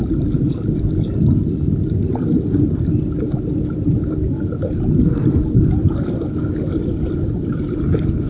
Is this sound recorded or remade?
remade